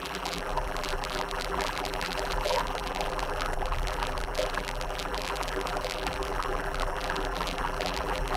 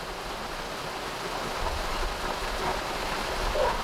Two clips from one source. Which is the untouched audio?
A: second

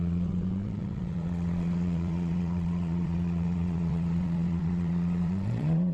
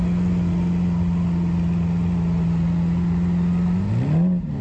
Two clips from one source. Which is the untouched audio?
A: second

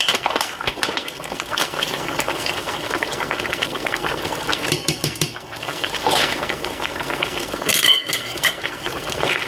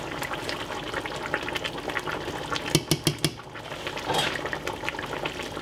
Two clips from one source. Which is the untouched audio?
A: second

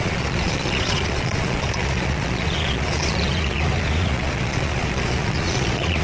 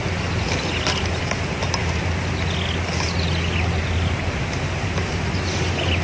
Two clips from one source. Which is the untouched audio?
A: second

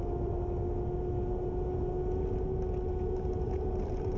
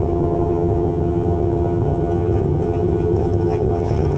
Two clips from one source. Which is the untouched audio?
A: first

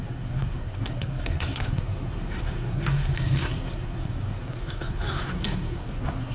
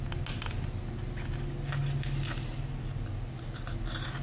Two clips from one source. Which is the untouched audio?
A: second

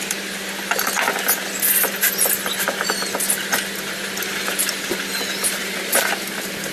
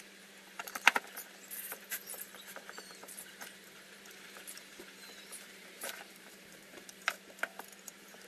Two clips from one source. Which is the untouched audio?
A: first